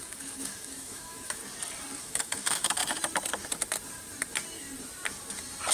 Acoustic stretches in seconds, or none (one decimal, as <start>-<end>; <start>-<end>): 1.4-2.0; 2.8-5.7